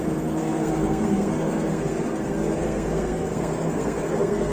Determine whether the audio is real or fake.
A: fake